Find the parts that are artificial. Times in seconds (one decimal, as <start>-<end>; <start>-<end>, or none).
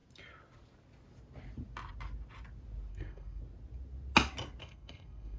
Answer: 2.9-3.4; 4.6-5.4